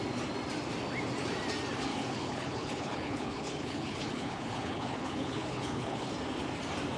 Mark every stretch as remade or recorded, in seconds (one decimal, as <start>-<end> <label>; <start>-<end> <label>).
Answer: 0.0-1.9 recorded; 1.9-6.1 remade; 6.1-7.0 recorded